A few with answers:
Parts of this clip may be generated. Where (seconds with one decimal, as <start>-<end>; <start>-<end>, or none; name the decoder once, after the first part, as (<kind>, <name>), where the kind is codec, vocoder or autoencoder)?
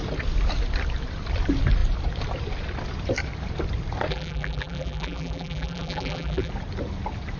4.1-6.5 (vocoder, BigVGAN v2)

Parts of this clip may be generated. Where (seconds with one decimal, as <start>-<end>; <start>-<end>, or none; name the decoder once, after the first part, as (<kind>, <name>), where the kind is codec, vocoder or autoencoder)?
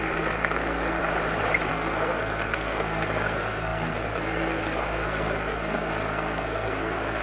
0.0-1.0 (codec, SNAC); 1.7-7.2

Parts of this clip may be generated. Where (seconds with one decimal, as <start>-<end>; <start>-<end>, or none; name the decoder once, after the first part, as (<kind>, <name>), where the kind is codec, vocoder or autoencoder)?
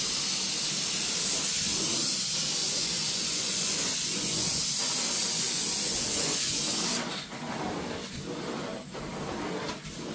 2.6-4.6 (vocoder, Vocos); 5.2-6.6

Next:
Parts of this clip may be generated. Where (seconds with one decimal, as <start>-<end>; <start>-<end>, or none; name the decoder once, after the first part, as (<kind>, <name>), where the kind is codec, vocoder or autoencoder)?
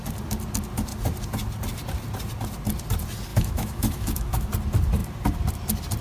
3.3-4.5 (autoencoder, DAC-VAE)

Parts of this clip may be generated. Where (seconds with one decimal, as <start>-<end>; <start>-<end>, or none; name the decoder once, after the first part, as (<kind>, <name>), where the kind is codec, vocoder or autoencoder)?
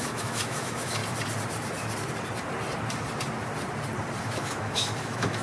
0.0-1.0 (autoencoder, DAC-VAE); 4.2-5.4